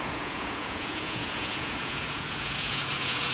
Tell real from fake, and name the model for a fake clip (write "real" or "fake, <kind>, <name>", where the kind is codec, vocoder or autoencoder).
fake, vocoder, Vocos